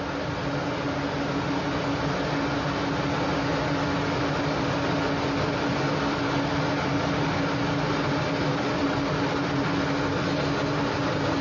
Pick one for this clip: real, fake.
real